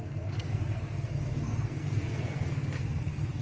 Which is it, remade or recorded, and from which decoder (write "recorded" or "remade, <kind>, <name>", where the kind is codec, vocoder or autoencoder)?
remade, codec, SNAC